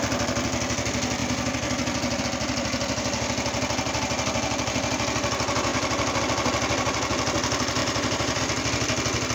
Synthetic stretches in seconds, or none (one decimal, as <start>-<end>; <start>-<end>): 7.8-8.4